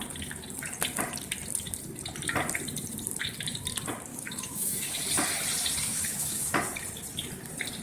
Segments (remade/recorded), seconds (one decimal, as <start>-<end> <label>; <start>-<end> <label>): 0.0-4.1 recorded; 4.1-5.0 remade; 5.0-5.9 recorded; 5.9-6.6 remade; 6.6-7.8 recorded